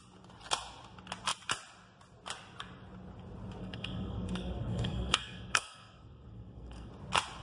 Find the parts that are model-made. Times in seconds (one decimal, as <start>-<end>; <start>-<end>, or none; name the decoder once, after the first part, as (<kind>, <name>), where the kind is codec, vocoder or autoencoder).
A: 3.6-6.9 (codec, SNAC)